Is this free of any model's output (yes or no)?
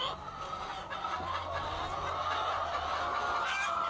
yes